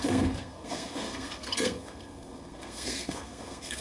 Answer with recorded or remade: remade